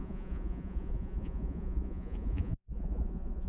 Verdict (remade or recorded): remade